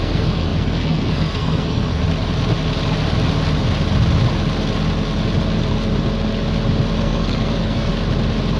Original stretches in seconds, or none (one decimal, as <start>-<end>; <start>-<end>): 2.0-7.0; 7.9-8.6